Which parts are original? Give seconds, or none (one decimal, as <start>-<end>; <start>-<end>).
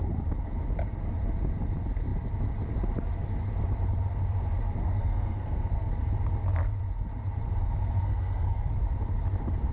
0.0-4.8; 5.9-7.6; 8.7-9.7